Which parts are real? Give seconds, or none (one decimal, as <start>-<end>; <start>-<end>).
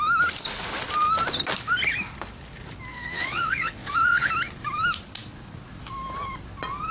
0.0-2.9; 4.3-6.9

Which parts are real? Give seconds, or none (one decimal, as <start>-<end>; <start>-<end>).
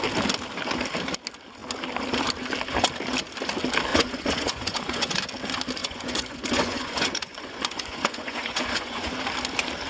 0.0-3.9; 5.2-5.8; 9.1-9.9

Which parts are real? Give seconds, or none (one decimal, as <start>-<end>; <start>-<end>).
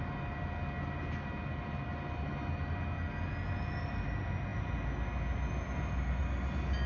0.0-6.9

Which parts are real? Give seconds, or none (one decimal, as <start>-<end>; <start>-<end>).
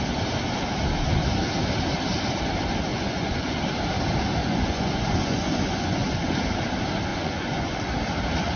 0.0-2.9; 3.6-4.4; 6.3-7.1; 7.8-8.6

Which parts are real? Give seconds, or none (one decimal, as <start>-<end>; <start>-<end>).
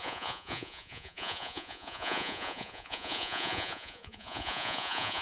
none